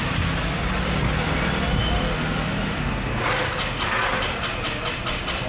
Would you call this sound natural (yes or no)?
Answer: yes